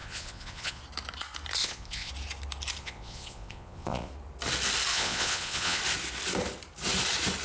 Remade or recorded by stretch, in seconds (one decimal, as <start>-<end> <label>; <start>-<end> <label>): 0.0-0.8 remade; 0.8-1.6 recorded; 1.6-2.1 remade; 2.1-2.8 recorded; 2.8-4.1 remade; 4.1-4.9 recorded; 4.9-5.8 remade; 5.8-7.4 recorded